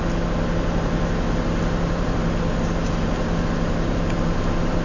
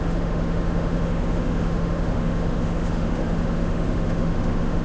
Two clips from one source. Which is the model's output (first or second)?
second